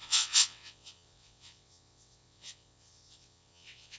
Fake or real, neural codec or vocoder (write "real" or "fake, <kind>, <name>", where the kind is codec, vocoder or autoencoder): fake, vocoder, WaveNeXt